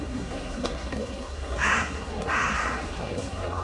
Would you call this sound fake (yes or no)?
yes